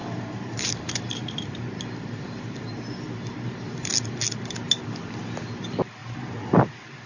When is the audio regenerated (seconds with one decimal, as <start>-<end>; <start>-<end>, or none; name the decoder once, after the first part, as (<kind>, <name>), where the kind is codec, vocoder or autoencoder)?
0.0-3.9 (vocoder, BigVGAN v2); 6.0-7.1